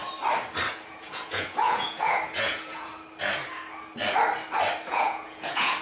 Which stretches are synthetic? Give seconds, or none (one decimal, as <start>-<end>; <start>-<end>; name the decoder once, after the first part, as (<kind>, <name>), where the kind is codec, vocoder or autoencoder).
0.7-2.9 (vocoder, Vocos); 4.9-5.8